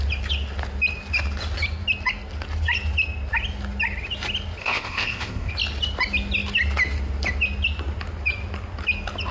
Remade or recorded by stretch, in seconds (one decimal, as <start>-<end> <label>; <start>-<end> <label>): 0.0-4.6 recorded; 4.6-5.5 remade; 5.5-9.3 recorded